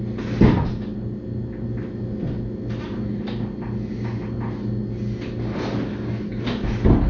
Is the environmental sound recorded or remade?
recorded